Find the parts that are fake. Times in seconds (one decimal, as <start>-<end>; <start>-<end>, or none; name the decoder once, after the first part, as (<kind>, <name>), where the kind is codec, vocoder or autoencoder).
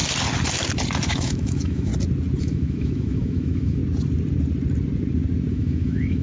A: 1.1-1.9 (autoencoder, DAC-VAE); 2.4-3.8; 5.5-6.2